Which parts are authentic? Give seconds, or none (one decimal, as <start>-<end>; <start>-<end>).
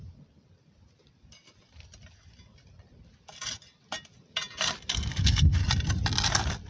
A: 0.0-5.1; 5.6-6.7